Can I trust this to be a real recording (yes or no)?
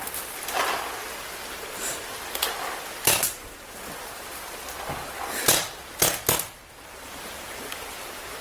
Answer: yes